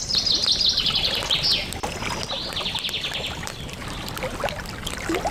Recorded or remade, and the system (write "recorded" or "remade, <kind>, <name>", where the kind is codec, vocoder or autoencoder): recorded